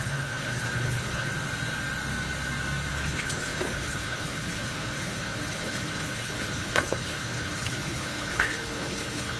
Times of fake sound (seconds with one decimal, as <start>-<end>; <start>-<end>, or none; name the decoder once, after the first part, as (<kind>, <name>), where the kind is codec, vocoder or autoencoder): 0.0-1.3 (codec, HILCodec); 2.9-9.4